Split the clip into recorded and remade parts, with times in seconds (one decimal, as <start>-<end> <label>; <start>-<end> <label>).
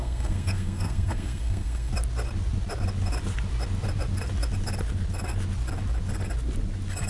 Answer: 0.0-1.9 remade; 1.9-7.1 recorded